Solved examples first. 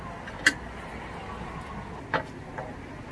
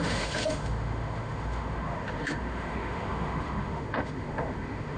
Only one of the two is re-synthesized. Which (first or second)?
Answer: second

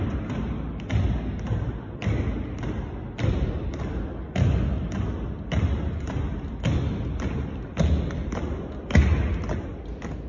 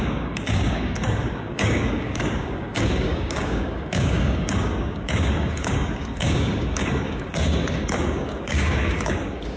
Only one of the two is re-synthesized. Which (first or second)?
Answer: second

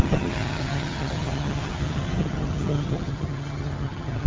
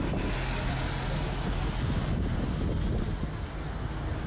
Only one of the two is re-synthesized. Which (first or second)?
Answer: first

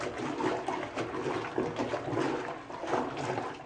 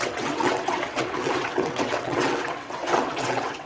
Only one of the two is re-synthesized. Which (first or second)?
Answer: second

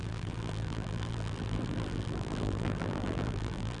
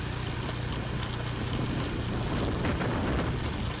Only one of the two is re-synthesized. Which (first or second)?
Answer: first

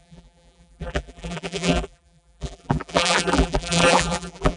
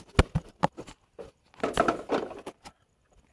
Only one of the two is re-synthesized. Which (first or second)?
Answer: first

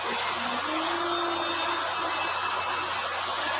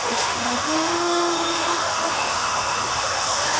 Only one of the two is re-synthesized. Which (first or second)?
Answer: second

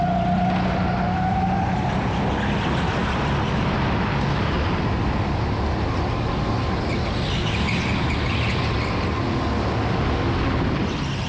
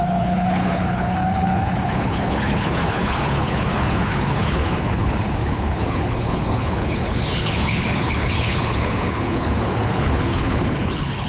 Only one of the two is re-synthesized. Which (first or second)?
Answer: second